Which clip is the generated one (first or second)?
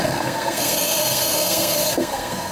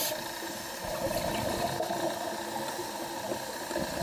first